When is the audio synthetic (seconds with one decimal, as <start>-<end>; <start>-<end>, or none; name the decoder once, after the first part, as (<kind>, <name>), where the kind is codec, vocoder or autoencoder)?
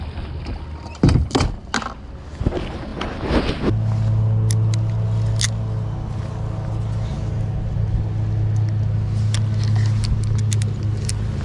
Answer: none